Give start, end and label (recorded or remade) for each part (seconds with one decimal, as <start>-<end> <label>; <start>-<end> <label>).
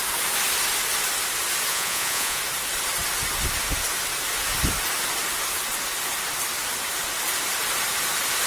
0.0-1.7 recorded; 1.7-2.4 remade; 2.4-8.5 recorded